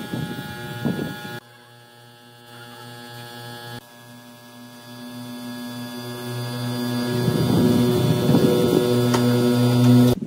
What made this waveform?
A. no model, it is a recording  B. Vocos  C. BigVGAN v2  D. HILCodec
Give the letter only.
A